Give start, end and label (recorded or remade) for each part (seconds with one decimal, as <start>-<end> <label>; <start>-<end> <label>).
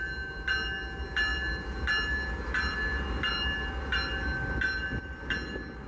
0.0-5.9 recorded